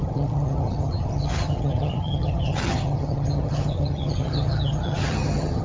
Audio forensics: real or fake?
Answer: fake